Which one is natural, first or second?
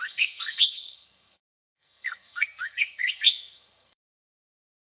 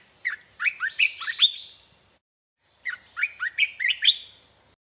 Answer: second